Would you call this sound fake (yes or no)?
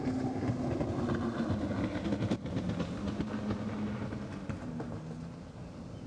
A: no